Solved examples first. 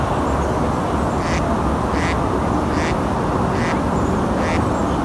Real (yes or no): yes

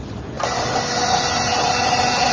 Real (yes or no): yes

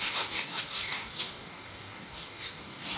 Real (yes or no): no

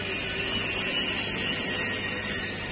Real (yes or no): yes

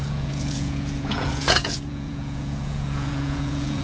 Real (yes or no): no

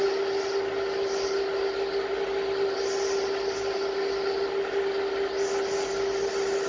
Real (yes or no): yes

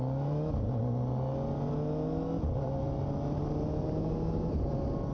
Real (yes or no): yes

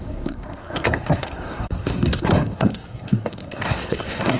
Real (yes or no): no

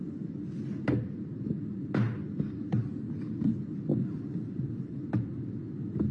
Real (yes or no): yes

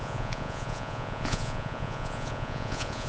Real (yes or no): no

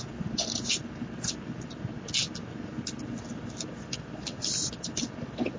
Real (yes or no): yes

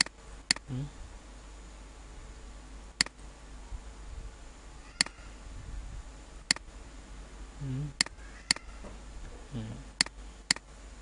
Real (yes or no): yes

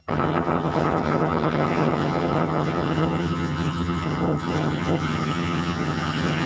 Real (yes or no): no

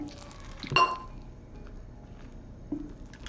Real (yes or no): yes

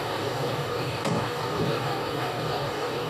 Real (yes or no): no